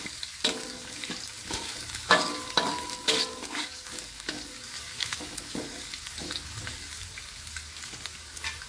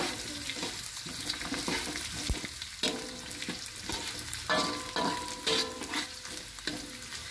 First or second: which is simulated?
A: first